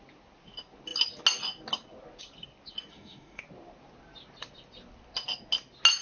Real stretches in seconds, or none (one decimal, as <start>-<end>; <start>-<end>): 0.0-2.9; 3.4-6.0